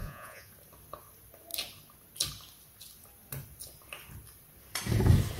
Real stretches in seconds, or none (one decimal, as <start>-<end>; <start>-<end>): 0.5-5.4